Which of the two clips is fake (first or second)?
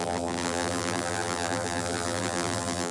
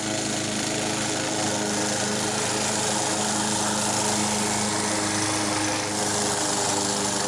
first